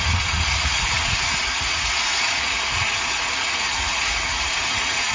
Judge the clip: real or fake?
fake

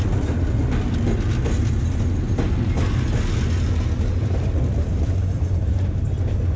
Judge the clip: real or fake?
real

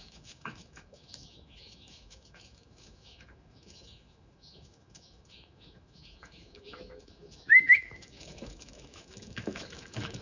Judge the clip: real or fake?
fake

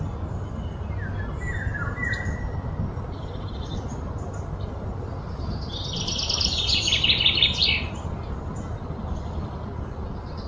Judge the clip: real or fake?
real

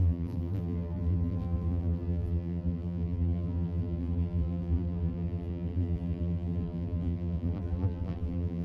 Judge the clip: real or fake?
fake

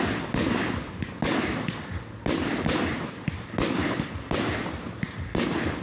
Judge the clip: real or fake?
real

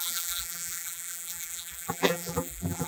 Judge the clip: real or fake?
fake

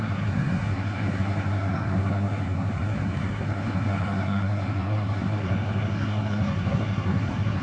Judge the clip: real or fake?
fake